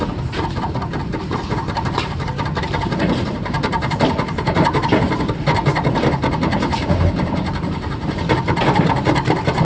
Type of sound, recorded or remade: remade